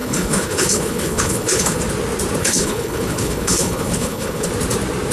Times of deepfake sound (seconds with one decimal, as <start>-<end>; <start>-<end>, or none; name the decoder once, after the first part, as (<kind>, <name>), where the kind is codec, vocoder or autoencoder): 0.0-1.8 (codec, HILCodec); 2.4-4.5